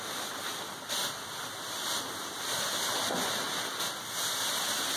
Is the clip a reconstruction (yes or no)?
no